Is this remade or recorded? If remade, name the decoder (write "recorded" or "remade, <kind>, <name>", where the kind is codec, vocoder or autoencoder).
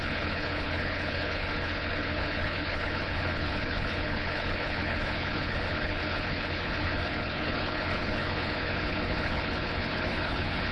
remade, codec, HILCodec